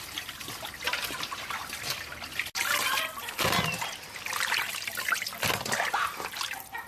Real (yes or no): yes